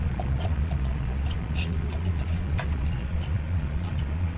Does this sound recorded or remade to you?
remade